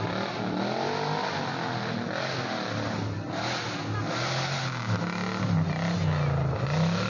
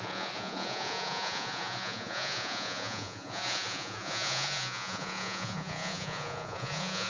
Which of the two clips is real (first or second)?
first